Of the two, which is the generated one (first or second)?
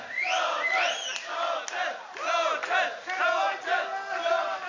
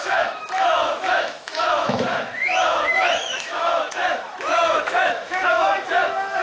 second